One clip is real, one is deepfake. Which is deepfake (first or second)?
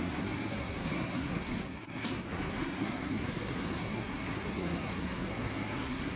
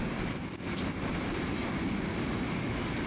first